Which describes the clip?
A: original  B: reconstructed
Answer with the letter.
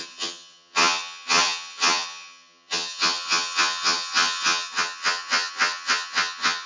B